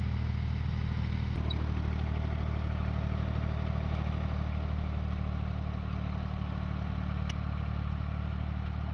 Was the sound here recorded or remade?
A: recorded